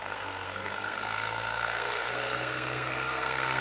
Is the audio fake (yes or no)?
yes